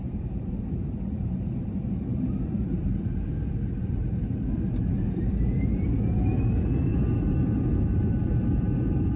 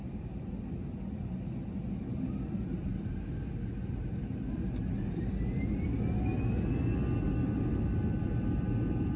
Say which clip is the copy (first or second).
first